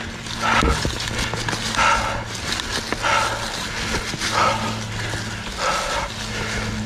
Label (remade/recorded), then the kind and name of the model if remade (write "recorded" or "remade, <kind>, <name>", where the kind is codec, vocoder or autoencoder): recorded